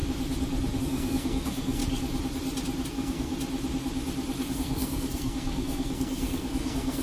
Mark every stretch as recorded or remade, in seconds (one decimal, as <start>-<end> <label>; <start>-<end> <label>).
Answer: 0.0-0.8 recorded; 0.8-1.8 remade; 1.8-2.9 recorded; 2.9-3.3 remade; 3.3-4.5 recorded; 4.5-7.0 remade